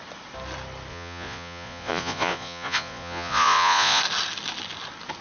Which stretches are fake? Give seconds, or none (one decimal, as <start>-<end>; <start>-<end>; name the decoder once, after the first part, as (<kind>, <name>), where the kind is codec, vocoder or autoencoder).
0.9-4.0 (vocoder, Vocos)